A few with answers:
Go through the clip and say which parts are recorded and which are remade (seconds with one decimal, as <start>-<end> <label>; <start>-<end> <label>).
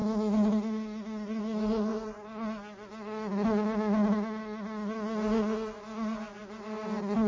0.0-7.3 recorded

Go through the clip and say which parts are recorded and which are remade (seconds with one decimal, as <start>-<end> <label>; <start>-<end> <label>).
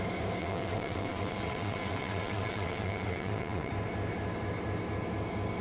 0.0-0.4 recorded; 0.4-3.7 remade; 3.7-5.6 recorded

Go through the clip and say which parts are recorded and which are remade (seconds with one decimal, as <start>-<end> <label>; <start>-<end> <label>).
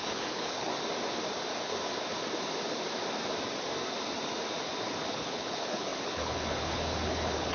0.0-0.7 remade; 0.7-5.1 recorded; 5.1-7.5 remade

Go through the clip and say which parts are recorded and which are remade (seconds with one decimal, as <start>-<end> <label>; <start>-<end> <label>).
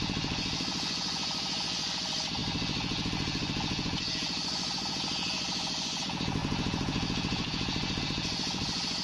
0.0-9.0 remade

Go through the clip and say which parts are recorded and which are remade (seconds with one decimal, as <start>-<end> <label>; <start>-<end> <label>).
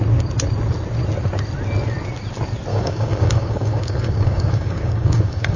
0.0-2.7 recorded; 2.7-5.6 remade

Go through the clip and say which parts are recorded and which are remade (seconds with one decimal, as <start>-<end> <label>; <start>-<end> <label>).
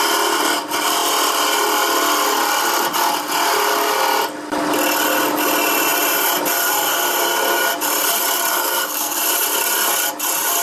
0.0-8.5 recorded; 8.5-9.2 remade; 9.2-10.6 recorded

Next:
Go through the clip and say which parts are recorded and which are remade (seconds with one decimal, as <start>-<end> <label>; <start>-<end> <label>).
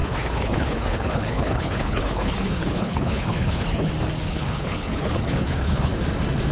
0.0-3.9 remade; 3.9-4.3 recorded; 4.3-5.9 remade; 5.9-6.5 recorded